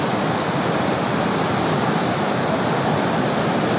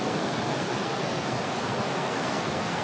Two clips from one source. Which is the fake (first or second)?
second